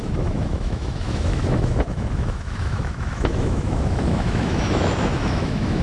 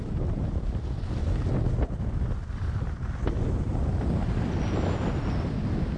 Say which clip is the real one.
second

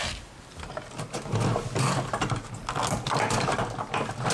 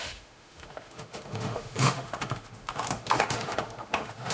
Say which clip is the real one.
first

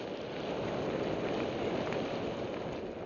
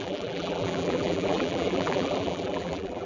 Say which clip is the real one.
first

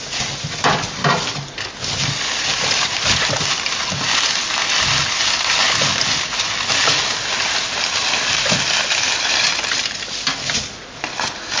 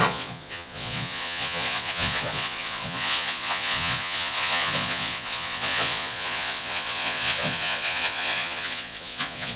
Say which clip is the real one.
first